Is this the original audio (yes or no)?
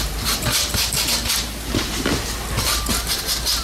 yes